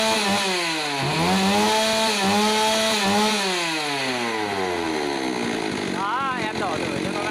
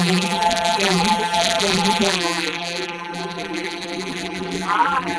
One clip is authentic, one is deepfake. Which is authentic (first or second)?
first